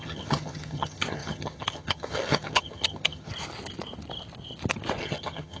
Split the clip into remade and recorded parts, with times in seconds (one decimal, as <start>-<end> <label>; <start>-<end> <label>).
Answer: 0.0-3.3 remade; 3.3-5.0 recorded; 5.0-5.6 remade